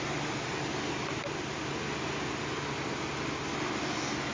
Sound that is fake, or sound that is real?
real